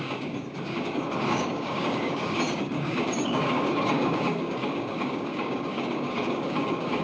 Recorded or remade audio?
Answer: remade